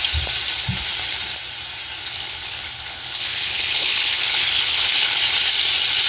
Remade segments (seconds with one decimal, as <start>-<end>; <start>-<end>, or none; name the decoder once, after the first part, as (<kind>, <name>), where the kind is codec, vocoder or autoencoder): 2.0-5.2 (codec, HILCodec)